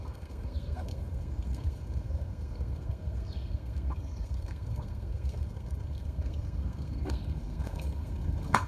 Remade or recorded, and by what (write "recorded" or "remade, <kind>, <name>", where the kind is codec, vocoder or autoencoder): remade, codec, SNAC